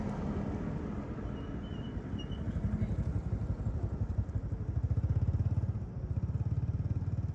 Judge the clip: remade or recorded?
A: recorded